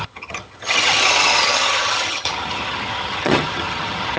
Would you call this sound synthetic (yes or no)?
yes